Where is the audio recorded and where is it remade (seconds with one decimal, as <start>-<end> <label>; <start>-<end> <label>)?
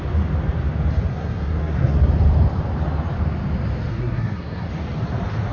0.0-1.1 recorded; 1.1-2.1 remade; 2.1-3.9 recorded; 3.9-4.7 remade; 4.7-5.5 recorded